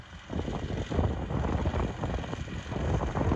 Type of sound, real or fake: real